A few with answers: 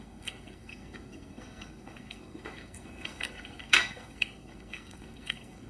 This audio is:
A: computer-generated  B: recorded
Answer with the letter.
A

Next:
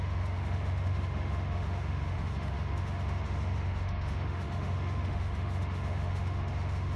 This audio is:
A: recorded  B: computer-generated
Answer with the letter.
B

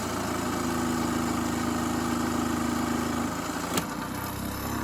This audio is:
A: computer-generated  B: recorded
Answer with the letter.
B